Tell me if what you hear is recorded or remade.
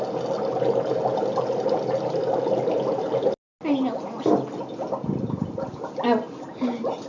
recorded